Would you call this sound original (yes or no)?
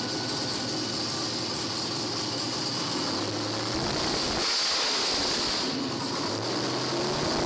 yes